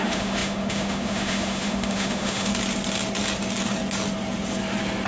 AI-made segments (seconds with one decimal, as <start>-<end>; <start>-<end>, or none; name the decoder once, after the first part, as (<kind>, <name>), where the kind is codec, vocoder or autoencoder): 0.0-2.5 (autoencoder, DAC-VAE)